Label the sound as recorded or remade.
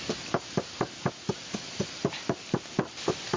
recorded